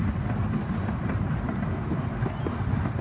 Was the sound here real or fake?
real